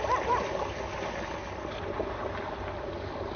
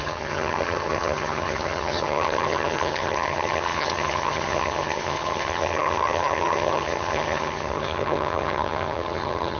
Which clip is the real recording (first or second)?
first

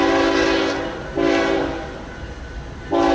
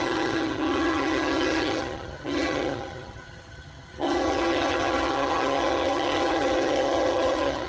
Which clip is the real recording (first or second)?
first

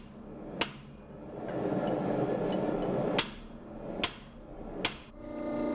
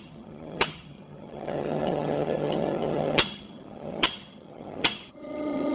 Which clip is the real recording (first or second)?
first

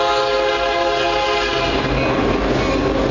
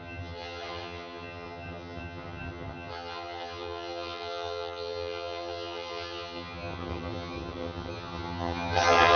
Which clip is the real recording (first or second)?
first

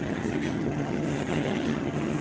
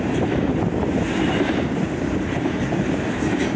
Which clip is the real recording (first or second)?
second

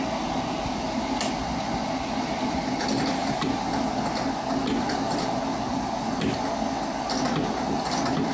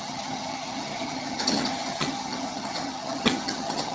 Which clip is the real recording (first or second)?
first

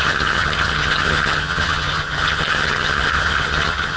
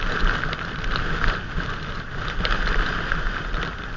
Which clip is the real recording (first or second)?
second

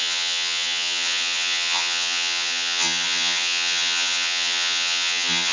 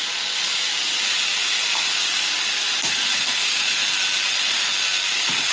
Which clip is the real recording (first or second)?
second